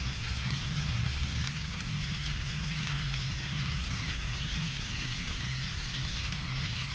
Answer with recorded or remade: remade